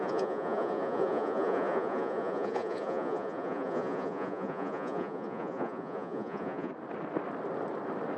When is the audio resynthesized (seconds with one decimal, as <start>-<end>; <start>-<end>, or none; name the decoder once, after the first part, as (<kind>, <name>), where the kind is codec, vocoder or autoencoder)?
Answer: 0.0-6.7 (vocoder, Vocos)